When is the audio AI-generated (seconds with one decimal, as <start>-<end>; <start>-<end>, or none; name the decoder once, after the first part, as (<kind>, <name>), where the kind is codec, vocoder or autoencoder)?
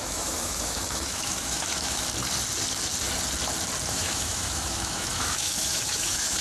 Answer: 0.0-2.1 (autoencoder, DAC-VAE); 3.9-6.4